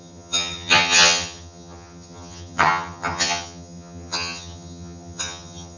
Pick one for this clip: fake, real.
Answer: fake